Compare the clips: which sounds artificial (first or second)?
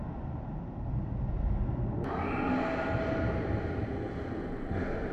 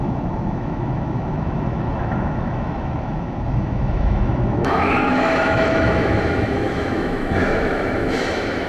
second